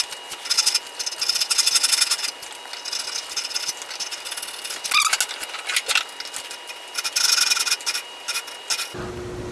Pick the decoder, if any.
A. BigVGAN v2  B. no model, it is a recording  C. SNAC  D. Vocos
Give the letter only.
B